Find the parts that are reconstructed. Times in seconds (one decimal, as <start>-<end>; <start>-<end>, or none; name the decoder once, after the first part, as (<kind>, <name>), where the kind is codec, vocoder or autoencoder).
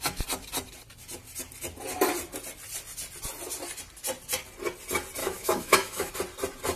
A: 5.2-6.1 (autoencoder, DAC-VAE)